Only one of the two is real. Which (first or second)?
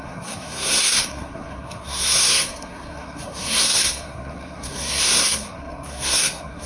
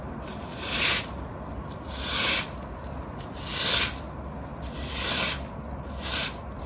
second